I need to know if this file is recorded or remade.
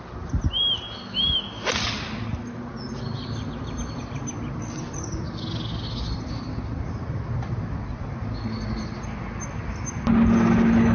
recorded